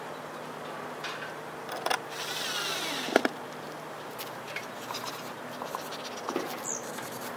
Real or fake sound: real